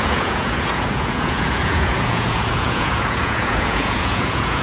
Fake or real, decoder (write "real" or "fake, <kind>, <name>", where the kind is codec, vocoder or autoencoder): fake, vocoder, Vocos